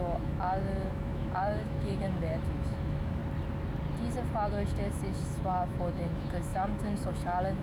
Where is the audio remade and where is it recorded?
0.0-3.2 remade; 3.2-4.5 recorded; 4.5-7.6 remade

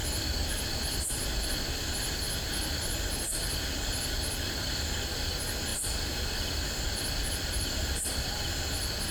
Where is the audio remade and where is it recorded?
0.0-9.1 recorded

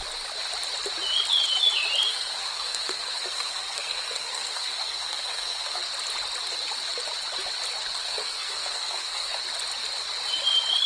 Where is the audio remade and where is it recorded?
0.0-2.1 recorded; 2.1-5.8 remade; 5.8-8.0 recorded; 8.0-9.4 remade; 9.4-10.9 recorded

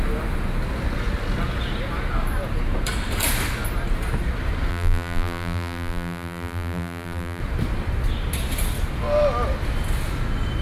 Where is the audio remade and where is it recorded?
0.0-4.7 recorded; 4.7-7.4 remade; 7.4-10.6 recorded